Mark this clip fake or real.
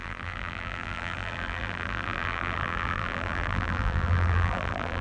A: fake